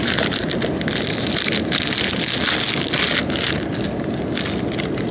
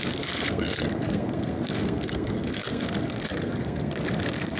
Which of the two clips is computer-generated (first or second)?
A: second